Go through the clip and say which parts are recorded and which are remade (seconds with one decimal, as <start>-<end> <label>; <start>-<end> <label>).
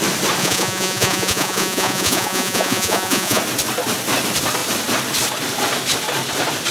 0.0-0.4 recorded; 0.4-3.4 remade; 3.4-6.7 recorded